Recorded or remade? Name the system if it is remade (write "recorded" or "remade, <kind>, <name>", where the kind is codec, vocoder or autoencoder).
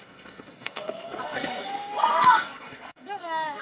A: remade, codec, SNAC